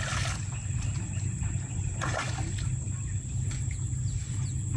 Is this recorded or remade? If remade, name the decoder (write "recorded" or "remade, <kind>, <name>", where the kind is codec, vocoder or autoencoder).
recorded